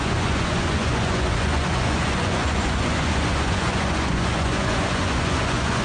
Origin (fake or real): fake